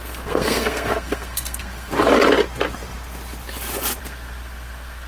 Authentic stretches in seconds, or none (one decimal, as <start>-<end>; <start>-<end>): 1.9-4.0